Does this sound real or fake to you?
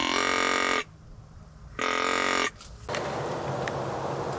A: real